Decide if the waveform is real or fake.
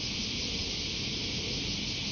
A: real